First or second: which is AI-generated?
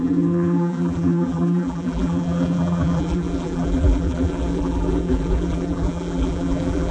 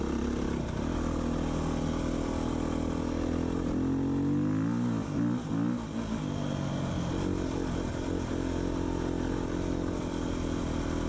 first